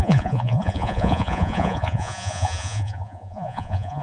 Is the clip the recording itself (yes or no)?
no